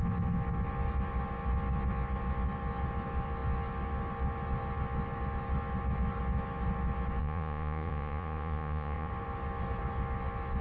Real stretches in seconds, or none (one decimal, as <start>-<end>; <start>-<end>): 0.0-7.2; 9.1-10.6